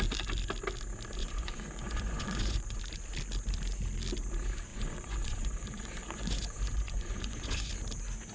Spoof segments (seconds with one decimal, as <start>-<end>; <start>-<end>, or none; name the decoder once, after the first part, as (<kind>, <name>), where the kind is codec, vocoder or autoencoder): 1.2-2.8 (vocoder, Vocos); 4.7-7.7